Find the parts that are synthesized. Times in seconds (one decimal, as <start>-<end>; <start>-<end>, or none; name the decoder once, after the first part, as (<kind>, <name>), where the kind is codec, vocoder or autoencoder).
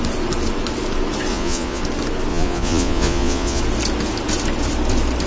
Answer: 1.3-1.8 (vocoder, Vocos); 2.3-3.6